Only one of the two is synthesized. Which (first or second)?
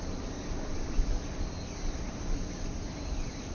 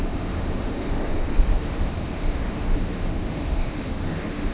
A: second